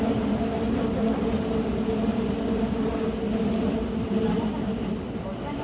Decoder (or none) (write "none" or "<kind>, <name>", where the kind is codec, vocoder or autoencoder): none